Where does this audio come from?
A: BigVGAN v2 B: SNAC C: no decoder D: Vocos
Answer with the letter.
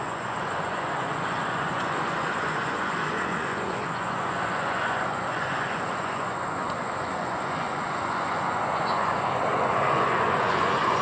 D